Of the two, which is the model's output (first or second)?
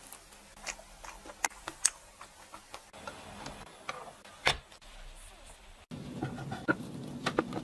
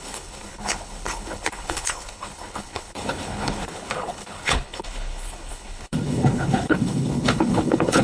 second